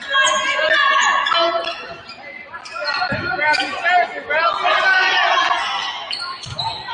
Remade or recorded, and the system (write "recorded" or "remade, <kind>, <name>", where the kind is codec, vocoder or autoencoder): recorded